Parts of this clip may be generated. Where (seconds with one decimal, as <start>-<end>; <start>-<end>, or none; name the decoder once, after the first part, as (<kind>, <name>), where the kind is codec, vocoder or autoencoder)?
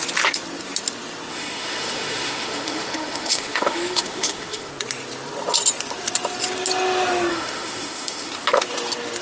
1.3-4.7 (autoencoder, DAC-VAE); 7.3-8.3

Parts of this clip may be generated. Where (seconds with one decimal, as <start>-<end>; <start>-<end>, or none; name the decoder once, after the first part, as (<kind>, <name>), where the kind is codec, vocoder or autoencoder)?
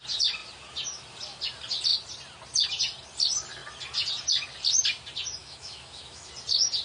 5.4-6.3 (autoencoder, DAC-VAE)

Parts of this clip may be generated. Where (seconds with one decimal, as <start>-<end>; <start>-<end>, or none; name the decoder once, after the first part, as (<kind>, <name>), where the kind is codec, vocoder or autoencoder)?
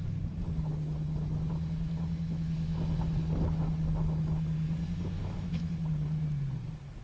5.2-5.7 (autoencoder, DAC-VAE)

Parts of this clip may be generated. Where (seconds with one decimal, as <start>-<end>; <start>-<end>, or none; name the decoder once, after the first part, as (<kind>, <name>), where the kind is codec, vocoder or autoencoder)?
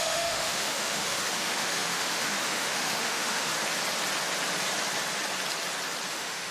0.0-3.5 (autoencoder, DAC-VAE); 6.1-6.5